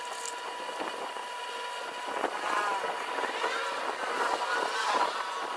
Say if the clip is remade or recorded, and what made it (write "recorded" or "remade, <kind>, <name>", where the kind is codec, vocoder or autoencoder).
recorded